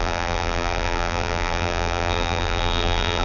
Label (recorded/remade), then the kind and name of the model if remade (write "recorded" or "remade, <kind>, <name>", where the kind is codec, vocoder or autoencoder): remade, vocoder, BigVGAN v2